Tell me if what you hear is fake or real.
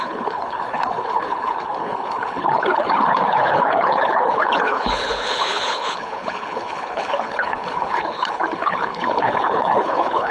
fake